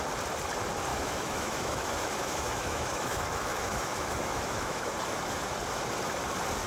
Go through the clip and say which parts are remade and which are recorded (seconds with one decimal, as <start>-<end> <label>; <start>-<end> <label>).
0.0-0.9 recorded; 0.9-4.9 remade; 4.9-6.7 recorded